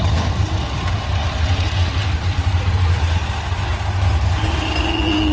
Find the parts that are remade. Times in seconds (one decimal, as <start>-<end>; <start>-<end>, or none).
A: none